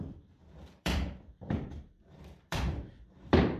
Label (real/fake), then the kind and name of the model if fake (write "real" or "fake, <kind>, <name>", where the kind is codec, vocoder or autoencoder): fake, vocoder, BigVGAN v2